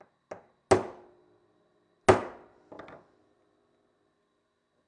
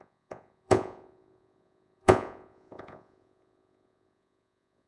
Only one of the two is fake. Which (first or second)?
second